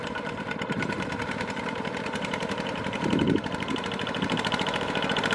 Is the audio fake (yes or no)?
yes